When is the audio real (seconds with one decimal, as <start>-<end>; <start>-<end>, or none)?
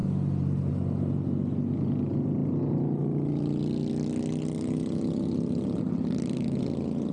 0.0-7.1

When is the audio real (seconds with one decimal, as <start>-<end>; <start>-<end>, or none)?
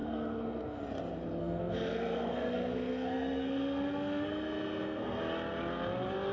0.8-1.4; 5.2-6.3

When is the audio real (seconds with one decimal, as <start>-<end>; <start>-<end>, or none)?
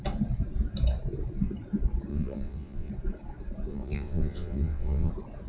0.0-2.1; 2.9-3.7; 5.1-5.5